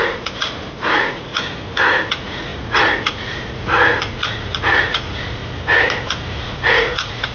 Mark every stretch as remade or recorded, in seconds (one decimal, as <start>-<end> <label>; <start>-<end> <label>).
0.0-1.3 remade; 1.3-2.1 recorded; 2.1-5.4 remade; 5.4-6.4 recorded; 6.4-7.3 remade